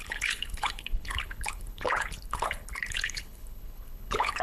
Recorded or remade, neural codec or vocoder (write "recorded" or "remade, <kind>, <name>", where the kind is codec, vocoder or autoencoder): remade, codec, HILCodec